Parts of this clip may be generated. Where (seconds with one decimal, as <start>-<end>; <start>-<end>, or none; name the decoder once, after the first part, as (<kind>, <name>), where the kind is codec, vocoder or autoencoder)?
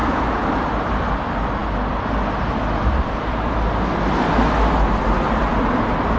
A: 0.0-1.1 (vocoder, BigVGAN v2); 2.8-3.7